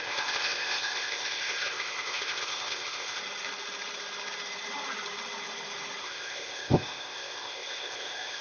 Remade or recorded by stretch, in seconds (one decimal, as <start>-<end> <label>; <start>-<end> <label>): 0.0-3.2 remade; 3.2-6.0 recorded; 6.0-8.4 remade